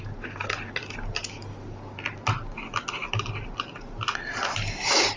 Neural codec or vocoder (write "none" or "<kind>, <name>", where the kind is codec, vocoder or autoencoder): none